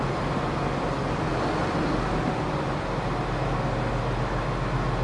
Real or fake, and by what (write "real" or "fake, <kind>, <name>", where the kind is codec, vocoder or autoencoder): real